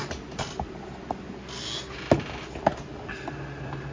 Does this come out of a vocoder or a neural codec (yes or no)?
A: no